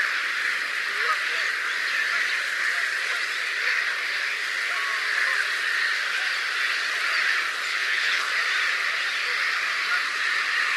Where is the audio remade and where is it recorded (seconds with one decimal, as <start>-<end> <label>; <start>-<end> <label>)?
0.0-7.7 recorded; 7.7-8.3 remade; 8.3-10.8 recorded